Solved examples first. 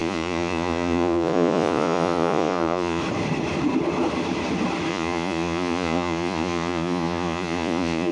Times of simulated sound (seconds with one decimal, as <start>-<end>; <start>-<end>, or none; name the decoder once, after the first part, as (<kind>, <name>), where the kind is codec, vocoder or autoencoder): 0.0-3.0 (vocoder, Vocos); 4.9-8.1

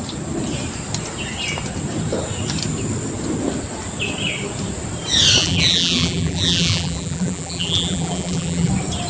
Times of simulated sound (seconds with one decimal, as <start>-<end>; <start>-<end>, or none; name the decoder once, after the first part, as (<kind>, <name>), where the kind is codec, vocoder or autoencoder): 5.4-8.7 (vocoder, BigVGAN v2)

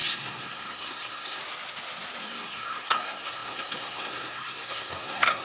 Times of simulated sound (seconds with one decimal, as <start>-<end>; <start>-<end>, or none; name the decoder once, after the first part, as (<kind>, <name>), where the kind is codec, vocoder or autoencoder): 0.0-1.4 (codec, SNAC); 2.2-5.4

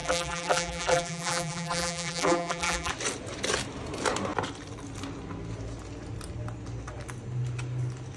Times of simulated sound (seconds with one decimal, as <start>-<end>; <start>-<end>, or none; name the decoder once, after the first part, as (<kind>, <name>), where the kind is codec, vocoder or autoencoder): 0.0-2.9 (vocoder, BigVGAN v2)